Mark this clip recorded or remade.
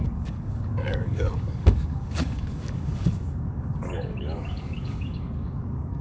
remade